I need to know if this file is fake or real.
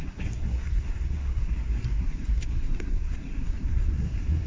fake